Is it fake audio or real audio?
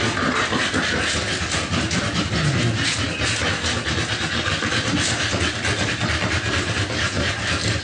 real